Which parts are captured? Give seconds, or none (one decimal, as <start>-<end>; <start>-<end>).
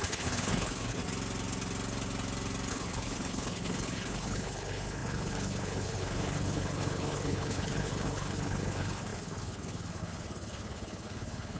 1.0-2.7